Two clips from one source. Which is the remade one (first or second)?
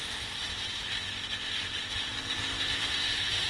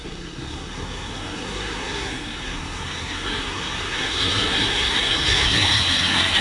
second